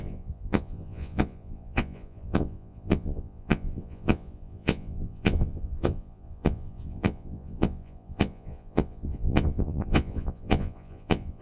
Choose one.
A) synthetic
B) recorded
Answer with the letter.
A